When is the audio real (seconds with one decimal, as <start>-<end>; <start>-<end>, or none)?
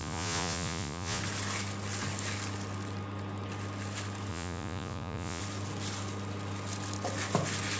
1.2-4.3; 5.4-7.8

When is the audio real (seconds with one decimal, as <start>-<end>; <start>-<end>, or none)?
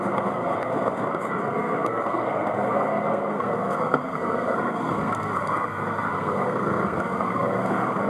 none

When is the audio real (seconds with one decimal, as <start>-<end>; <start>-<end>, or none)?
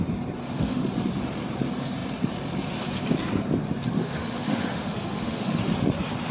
0.0-0.4; 0.9-4.0; 5.6-6.3